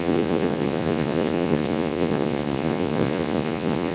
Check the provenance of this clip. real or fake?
fake